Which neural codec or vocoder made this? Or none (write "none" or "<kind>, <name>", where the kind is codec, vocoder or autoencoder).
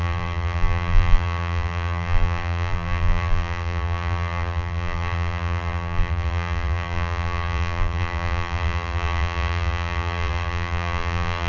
vocoder, BigVGAN v2